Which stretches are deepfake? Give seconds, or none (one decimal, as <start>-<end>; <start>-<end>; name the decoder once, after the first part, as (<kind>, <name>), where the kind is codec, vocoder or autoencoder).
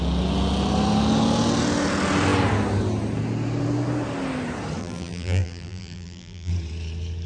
4.8-6.5 (vocoder, BigVGAN v2)